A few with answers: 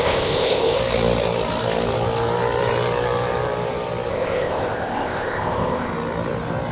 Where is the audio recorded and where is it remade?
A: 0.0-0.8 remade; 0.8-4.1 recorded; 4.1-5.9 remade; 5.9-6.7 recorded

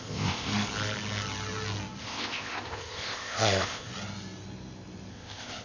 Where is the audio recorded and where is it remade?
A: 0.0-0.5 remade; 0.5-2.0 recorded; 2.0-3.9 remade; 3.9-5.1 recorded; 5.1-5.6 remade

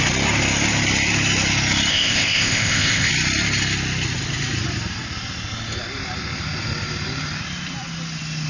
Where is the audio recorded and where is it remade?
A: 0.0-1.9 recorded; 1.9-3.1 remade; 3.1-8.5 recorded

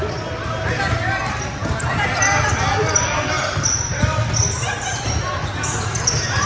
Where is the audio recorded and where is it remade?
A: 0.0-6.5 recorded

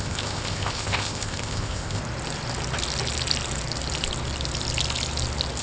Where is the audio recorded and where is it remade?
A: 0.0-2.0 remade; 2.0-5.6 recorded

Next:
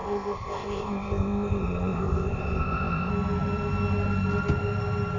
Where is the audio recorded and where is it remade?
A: 0.0-3.1 remade; 3.1-5.2 recorded